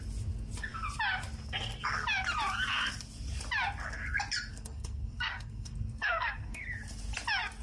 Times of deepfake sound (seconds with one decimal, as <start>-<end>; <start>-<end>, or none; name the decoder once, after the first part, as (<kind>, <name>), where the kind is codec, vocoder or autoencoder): 4.5-6.6 (codec, SNAC)